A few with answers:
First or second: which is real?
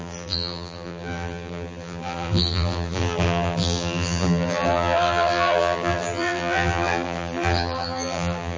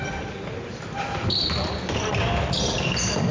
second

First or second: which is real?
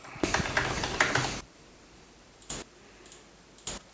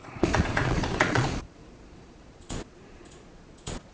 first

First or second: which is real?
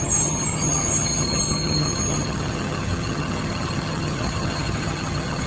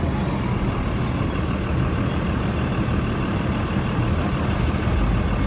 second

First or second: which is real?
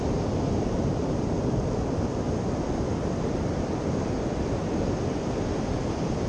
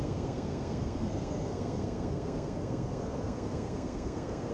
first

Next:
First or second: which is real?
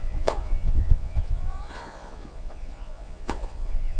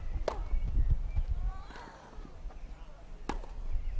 second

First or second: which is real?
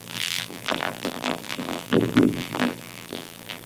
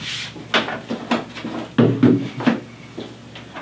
second